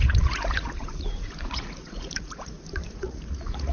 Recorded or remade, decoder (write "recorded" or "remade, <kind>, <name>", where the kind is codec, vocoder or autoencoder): remade, vocoder, Vocos